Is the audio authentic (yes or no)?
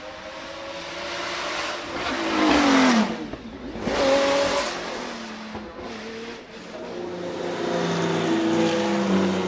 yes